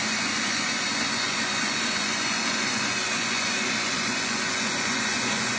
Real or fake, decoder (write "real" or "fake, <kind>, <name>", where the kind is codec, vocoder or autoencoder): fake, vocoder, Vocos